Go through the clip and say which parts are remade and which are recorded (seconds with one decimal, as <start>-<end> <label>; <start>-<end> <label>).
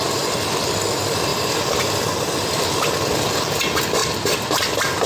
0.0-1.3 recorded; 1.3-2.9 remade; 2.9-4.0 recorded; 4.0-5.1 remade